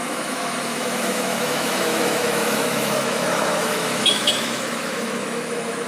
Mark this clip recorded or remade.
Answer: remade